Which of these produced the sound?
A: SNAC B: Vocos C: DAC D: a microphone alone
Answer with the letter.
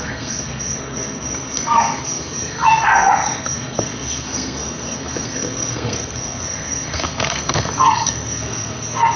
A